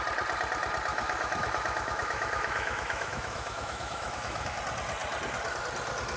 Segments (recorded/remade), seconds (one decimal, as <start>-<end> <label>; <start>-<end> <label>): 0.0-0.9 recorded; 0.9-4.6 remade; 4.6-6.2 recorded